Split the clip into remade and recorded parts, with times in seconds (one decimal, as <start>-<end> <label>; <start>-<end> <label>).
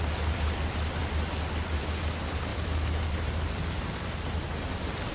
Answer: 0.0-2.5 recorded; 2.5-3.7 remade; 3.7-5.1 recorded